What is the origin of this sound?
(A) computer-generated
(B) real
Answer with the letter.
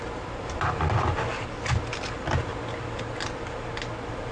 B